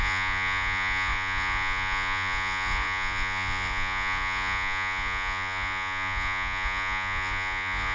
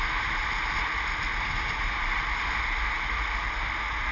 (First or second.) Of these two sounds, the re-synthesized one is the first